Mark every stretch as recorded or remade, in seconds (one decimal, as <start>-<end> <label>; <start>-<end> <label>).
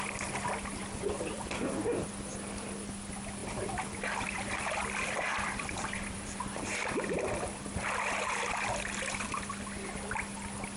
0.0-0.8 recorded; 0.8-1.6 remade; 1.6-3.4 recorded; 3.4-7.6 remade; 7.6-10.8 recorded